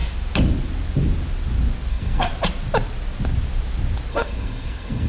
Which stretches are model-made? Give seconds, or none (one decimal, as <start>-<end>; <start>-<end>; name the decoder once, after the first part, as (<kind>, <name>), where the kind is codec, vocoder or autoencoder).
1.9-2.3 (codec, SNAC); 4.1-5.1